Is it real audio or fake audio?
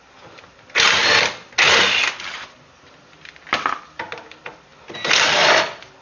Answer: real